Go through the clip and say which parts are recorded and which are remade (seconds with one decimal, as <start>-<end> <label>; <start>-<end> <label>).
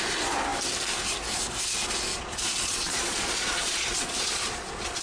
0.0-2.1 recorded; 2.1-5.0 remade